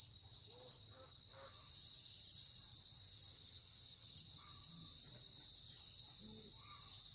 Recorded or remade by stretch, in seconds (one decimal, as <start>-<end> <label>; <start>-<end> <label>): 0.0-3.3 recorded; 3.3-4.2 remade; 4.2-7.1 recorded